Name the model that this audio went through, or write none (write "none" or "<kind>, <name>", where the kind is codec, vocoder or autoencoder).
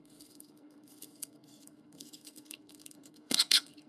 codec, SNAC